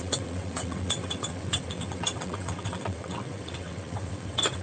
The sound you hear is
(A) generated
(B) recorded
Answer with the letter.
A